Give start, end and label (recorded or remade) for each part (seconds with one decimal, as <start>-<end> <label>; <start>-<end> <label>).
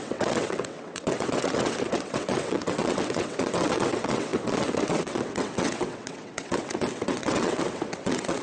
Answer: 0.0-8.4 remade